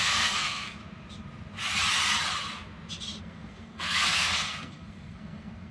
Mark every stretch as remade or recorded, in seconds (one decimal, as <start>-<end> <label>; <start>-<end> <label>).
0.0-0.8 remade; 0.8-3.2 recorded; 3.2-5.7 remade